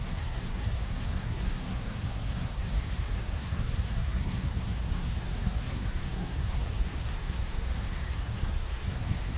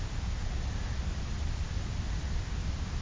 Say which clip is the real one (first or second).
second